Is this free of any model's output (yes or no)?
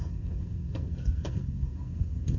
no